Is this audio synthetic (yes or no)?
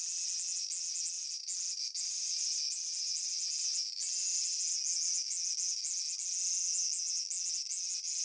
no